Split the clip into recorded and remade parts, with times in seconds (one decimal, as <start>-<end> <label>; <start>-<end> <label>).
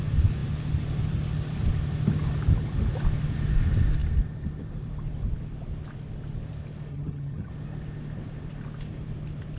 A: 0.0-6.9 recorded; 6.9-7.5 remade; 7.5-9.6 recorded